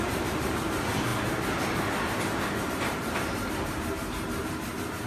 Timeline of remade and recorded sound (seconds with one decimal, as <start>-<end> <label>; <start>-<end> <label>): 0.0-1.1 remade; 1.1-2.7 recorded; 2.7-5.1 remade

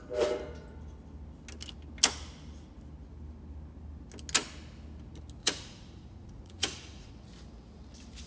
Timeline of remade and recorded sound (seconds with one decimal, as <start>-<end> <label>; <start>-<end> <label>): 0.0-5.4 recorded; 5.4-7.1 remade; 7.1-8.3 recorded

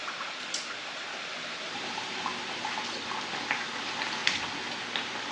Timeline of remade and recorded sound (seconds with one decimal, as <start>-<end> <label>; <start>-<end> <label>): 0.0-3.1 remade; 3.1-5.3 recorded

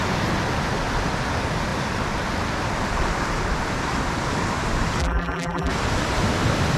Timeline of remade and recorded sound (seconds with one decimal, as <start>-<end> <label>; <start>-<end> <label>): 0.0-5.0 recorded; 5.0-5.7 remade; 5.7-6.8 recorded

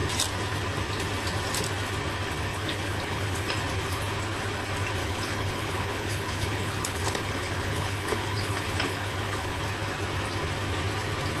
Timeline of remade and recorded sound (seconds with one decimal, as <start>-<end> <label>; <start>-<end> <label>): 0.0-2.5 recorded; 2.5-3.5 remade; 3.5-5.0 recorded; 5.0-9.6 remade; 9.6-11.4 recorded